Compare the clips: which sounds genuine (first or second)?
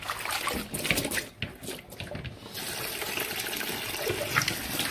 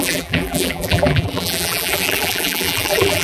first